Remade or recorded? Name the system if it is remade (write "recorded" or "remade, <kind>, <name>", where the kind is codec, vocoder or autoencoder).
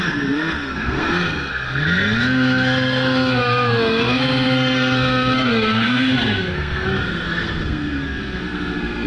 remade, codec, SNAC